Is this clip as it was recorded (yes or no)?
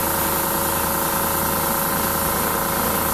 yes